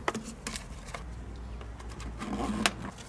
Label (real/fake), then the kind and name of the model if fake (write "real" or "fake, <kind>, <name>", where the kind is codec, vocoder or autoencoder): real